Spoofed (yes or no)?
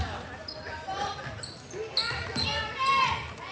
no